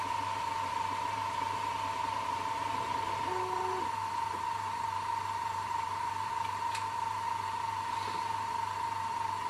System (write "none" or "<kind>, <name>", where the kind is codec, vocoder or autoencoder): vocoder, BigVGAN v2